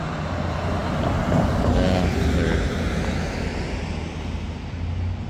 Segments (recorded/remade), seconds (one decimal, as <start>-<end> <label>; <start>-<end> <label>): 0.0-5.3 recorded